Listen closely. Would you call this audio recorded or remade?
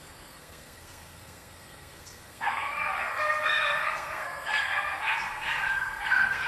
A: remade